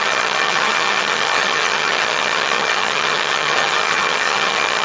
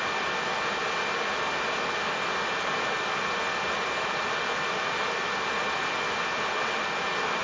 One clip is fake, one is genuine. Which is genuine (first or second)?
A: second